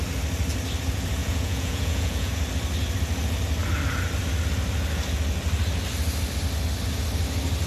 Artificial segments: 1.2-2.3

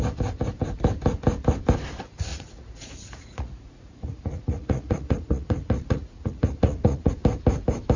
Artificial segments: 2.3-7.1

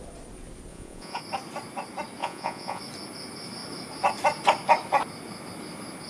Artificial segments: 0.7-1.2; 2.2-2.8